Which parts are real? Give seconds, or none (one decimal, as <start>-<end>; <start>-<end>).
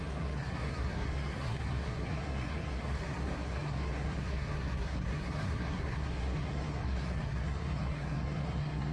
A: none